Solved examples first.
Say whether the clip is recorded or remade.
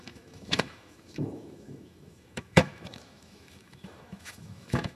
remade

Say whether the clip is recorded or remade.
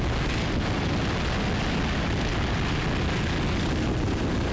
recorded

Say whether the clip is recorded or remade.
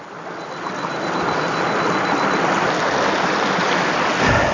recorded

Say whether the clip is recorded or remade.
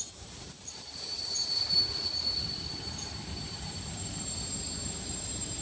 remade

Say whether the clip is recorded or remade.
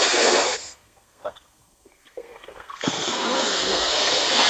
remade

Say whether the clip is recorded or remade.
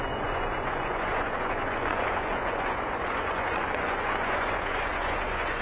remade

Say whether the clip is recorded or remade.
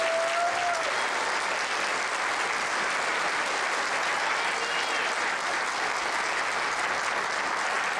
recorded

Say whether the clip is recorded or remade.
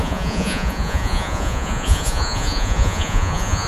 remade